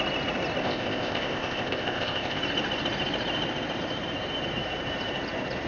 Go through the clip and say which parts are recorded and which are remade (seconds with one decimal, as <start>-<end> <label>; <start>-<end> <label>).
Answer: 0.0-0.6 recorded; 0.6-2.4 remade; 2.4-5.7 recorded